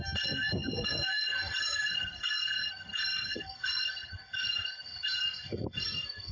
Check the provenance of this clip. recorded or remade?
remade